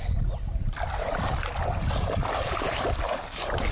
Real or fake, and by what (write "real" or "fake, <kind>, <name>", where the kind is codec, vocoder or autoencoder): real